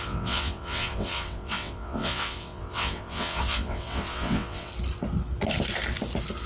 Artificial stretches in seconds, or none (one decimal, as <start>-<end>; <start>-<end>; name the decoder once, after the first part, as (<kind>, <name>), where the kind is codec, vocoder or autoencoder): 0.0-4.7 (vocoder, WaveNeXt)